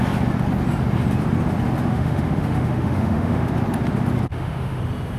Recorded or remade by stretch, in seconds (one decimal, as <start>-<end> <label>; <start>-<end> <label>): 0.0-1.9 recorded; 1.9-3.5 remade; 3.5-4.3 recorded; 4.3-4.8 remade; 4.8-5.2 recorded